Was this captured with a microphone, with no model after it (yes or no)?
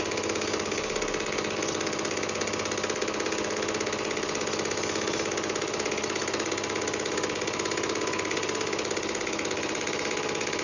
yes